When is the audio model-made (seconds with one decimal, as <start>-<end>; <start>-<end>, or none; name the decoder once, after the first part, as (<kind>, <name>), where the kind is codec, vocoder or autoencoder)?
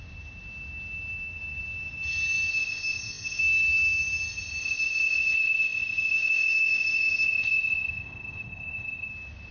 2.5-3.4 (codec, ZipCodec); 4.6-9.1